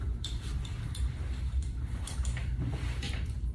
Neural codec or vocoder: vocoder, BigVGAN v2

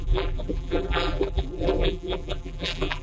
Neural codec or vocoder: vocoder, BigVGAN v2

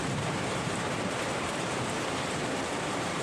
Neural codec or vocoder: vocoder, BigVGAN v2